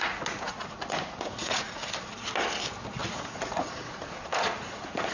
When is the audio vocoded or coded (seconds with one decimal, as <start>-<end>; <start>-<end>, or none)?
0.0-1.8; 3.0-5.1